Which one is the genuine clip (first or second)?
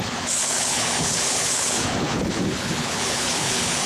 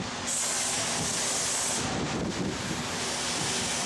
second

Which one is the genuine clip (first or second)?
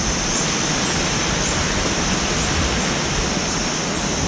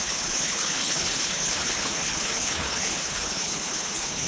first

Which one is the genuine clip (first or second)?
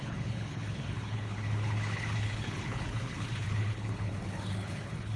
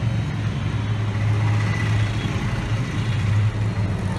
second